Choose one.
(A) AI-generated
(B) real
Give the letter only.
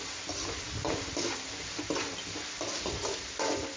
B